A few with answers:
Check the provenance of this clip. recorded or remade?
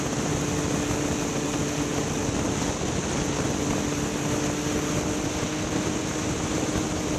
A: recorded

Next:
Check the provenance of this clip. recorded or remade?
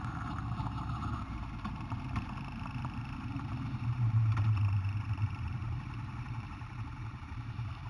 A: remade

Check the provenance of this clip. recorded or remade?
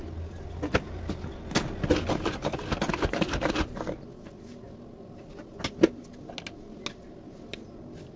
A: recorded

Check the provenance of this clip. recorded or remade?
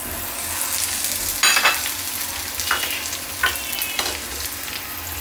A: recorded